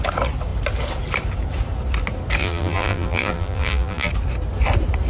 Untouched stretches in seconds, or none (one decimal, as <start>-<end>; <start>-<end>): 0.0-2.4; 4.1-5.1